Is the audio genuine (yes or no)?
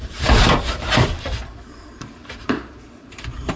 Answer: no